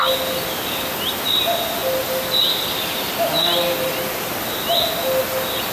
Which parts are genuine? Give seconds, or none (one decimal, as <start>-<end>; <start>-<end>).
0.0-5.7

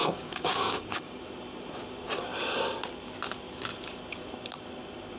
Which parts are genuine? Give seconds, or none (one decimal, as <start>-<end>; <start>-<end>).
1.2-5.2